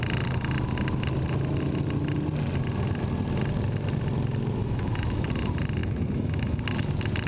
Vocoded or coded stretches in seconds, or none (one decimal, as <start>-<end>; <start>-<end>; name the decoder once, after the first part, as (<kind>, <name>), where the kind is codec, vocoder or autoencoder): 4.6-5.2 (autoencoder, DAC-VAE); 5.8-6.6